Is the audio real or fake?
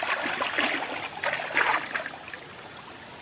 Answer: real